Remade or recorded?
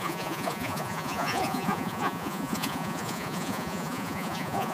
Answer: remade